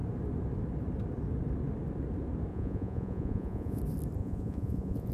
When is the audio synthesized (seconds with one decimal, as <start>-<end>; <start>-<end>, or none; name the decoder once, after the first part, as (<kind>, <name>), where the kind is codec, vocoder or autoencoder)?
2.5-3.8 (vocoder, Vocos); 4.2-5.1